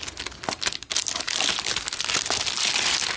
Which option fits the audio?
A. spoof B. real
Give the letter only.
B